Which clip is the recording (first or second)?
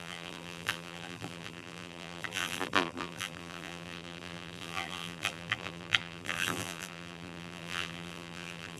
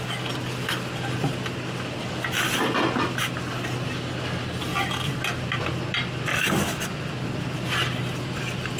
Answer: second